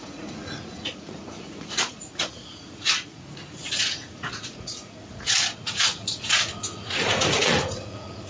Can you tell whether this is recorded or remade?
remade